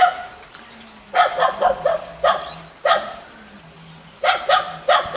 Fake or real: real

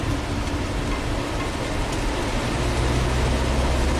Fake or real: real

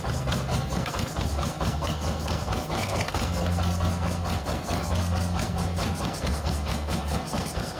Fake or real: fake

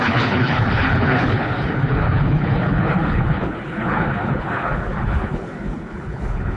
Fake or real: fake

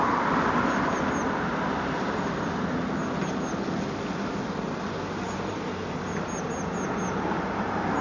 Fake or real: real